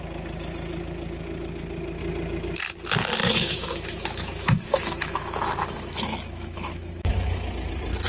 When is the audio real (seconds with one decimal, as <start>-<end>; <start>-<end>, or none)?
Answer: 0.0-3.2; 7.5-8.1